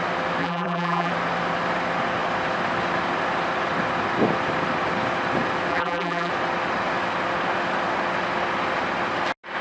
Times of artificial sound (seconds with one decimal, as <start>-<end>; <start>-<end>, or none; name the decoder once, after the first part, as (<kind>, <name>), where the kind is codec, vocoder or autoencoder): 0.4-1.1 (vocoder, BigVGAN v2); 5.7-6.3